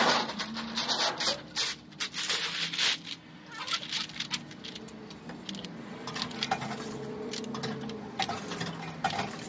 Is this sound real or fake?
real